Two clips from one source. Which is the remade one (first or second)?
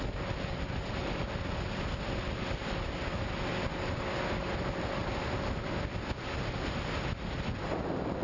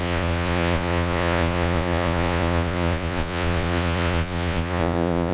second